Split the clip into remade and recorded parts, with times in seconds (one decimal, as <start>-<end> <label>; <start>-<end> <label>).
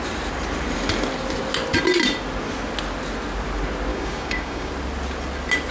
0.0-3.9 recorded; 3.9-4.7 remade; 4.7-5.7 recorded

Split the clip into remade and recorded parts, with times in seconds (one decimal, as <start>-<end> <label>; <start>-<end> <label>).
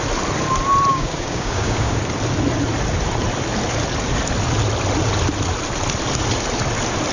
0.0-0.9 recorded; 0.9-2.0 remade; 2.0-7.1 recorded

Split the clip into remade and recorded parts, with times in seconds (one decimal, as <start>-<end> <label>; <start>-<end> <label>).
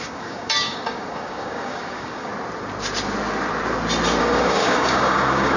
0.0-2.3 remade; 2.3-4.2 recorded; 4.2-5.6 remade